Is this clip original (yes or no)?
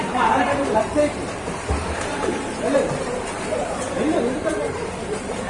no